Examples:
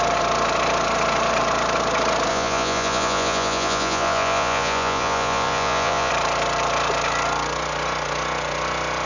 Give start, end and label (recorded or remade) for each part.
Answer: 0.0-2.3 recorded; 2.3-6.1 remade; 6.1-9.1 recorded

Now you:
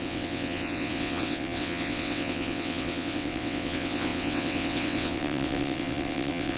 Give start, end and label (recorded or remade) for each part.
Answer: 0.0-6.6 remade

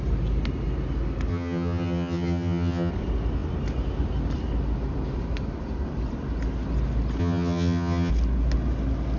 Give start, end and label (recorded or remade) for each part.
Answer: 0.0-1.3 recorded; 1.3-2.9 remade; 2.9-7.2 recorded; 7.2-8.1 remade; 8.1-9.2 recorded